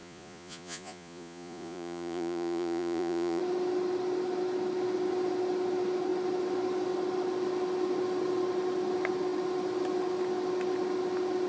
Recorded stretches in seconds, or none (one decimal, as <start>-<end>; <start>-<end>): 3.4-11.5